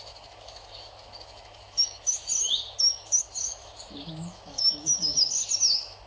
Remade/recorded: remade